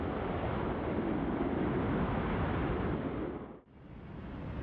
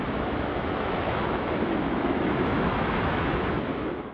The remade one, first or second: second